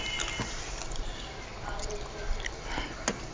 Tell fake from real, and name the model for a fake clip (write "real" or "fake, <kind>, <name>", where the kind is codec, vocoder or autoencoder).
real